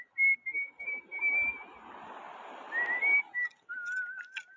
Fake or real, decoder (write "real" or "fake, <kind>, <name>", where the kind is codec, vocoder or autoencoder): real